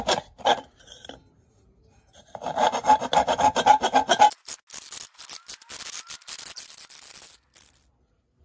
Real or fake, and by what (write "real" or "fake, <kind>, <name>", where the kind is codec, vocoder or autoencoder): real